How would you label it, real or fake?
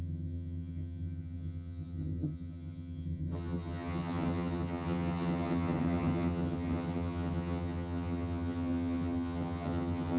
fake